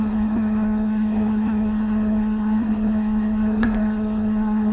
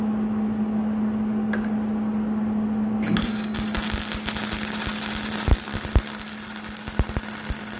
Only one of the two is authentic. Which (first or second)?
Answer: second